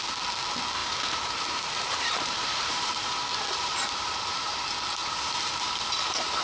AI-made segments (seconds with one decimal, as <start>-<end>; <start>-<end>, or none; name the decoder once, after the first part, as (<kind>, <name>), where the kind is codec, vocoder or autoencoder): 0.8-4.6 (vocoder, BigVGAN v2); 5.0-5.5